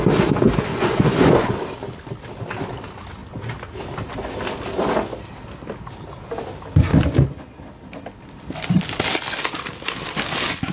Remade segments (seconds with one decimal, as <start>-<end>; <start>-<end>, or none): 0.7-1.5